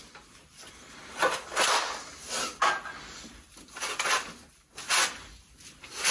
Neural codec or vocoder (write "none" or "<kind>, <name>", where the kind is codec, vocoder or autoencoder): none